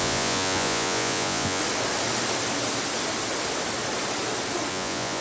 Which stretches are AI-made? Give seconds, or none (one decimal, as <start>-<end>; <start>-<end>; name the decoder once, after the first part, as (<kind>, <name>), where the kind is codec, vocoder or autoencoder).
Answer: 0.0-1.6 (vocoder, Vocos); 4.7-5.2